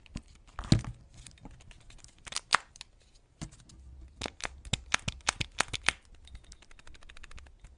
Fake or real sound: real